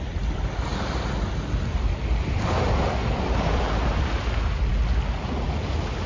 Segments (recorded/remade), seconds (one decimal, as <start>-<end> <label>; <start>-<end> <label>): 0.0-0.7 remade; 0.7-2.4 recorded; 2.4-4.7 remade; 4.7-6.1 recorded